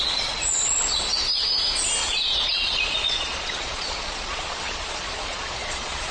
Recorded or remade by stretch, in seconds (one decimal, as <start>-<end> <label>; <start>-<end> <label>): 0.0-2.0 recorded; 2.0-6.1 remade